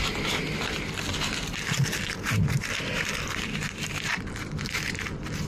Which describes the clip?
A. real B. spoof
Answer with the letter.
A